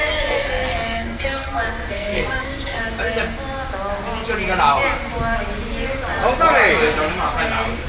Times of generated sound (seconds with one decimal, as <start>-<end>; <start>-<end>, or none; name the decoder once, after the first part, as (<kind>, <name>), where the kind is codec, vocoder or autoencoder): 0.0-2.8 (codec, SNAC)